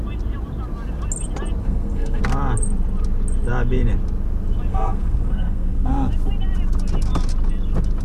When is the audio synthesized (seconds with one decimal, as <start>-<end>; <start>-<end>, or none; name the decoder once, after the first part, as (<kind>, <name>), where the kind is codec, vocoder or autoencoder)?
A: 1.6-2.2 (codec, SNAC); 4.7-6.1